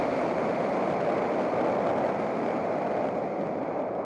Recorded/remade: recorded